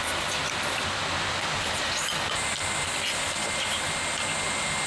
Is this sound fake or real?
real